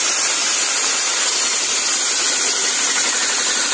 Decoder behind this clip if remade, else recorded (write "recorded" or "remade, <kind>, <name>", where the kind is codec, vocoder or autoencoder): recorded